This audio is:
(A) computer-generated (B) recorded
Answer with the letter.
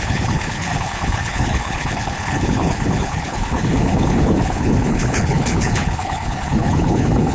A